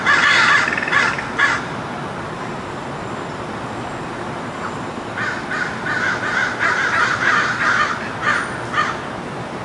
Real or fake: real